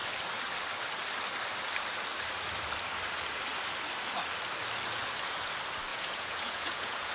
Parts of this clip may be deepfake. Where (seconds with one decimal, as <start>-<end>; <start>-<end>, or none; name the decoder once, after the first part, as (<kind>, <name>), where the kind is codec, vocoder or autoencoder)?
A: 5.9-7.1 (vocoder, Vocos)